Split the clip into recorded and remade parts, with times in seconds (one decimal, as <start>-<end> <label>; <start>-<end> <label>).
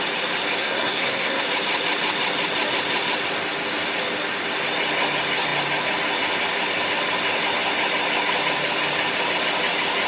0.0-0.6 recorded; 0.6-1.4 remade; 1.4-10.1 recorded